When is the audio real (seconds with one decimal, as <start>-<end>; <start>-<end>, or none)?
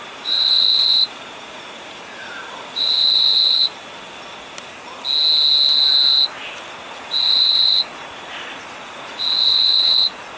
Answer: 3.6-6.7